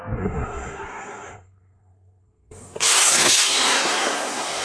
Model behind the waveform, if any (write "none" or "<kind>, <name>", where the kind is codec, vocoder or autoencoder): codec, SNAC